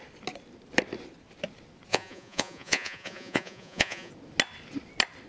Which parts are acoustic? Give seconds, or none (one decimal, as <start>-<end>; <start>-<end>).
0.0-1.9; 4.1-5.3